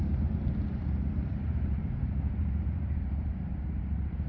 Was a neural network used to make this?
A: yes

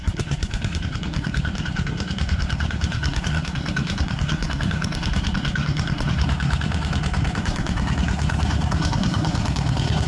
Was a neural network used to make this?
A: yes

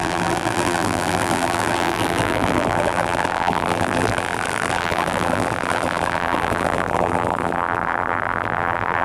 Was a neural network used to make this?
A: yes